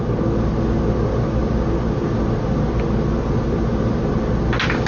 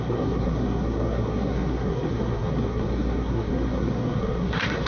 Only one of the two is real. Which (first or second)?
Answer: first